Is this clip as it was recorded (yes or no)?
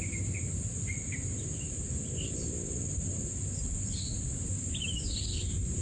no